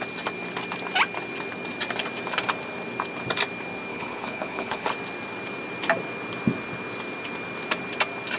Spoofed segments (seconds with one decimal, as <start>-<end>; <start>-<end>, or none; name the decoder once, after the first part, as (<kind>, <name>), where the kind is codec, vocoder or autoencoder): 3.9-4.9 (codec, HILCodec)